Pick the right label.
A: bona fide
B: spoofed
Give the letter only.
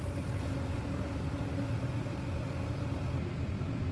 A